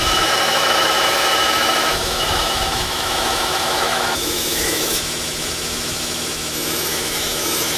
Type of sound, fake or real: fake